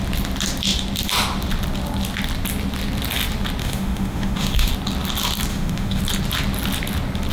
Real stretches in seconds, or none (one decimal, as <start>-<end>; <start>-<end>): 0.0-3.6; 4.7-5.5; 6.0-7.3